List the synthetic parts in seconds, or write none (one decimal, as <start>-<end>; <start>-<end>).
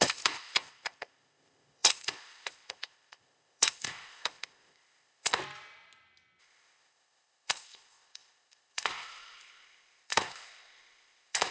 0.0-5.4; 6.4-11.5